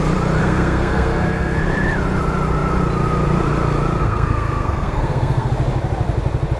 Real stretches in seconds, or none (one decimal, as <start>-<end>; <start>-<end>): 0.0-0.4; 1.6-4.0; 5.5-6.6